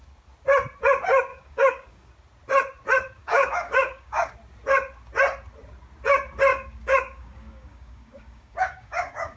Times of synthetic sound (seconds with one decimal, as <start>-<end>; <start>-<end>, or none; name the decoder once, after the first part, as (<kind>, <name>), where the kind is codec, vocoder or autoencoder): 1.3-2.1 (codec, DAC); 3.2-4.3; 6.5-9.4